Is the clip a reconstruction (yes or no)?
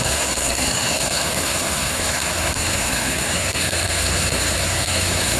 yes